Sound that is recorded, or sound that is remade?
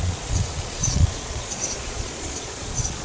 remade